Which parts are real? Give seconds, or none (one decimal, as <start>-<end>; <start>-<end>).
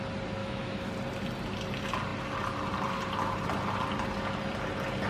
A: 0.0-0.4; 0.9-5.1